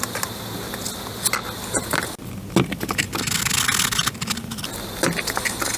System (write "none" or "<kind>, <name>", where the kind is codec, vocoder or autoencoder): none